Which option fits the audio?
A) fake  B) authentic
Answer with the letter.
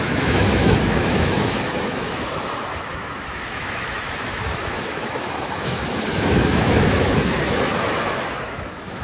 A